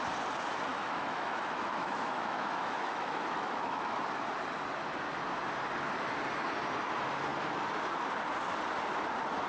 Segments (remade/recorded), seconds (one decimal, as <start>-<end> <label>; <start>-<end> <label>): 0.0-0.7 recorded; 0.7-4.0 remade; 4.0-9.5 recorded